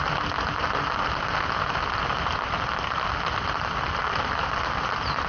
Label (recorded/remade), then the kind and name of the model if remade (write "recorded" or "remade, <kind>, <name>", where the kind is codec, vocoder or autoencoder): recorded